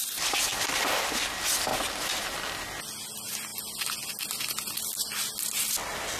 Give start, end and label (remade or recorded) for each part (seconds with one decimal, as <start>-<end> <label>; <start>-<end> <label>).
0.0-6.2 recorded